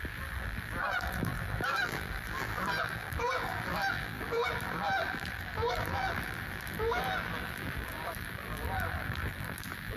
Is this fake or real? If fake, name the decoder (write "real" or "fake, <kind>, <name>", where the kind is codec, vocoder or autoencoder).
fake, vocoder, BigVGAN v2